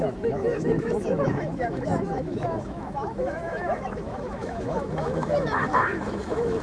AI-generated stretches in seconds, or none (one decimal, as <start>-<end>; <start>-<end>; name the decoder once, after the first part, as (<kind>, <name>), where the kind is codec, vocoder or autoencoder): 0.0-6.6 (autoencoder, DAC-VAE)